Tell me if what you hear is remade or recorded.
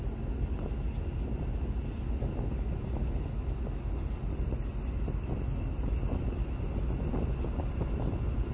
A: recorded